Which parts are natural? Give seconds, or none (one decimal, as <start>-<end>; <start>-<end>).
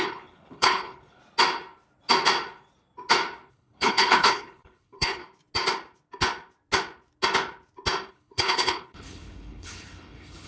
1.2-3.5; 5.2-8.1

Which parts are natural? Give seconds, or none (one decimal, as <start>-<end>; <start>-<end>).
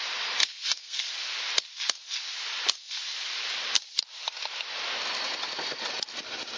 0.0-0.4; 1.1-6.6